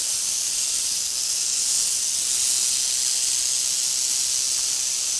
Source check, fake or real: real